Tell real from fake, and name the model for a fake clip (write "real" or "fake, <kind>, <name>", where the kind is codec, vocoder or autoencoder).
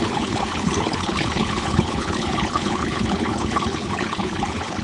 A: fake, codec, HILCodec